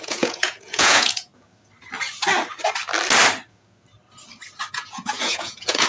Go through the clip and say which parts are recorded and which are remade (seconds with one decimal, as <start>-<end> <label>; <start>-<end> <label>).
0.0-1.3 remade; 1.3-4.7 recorded; 4.7-5.9 remade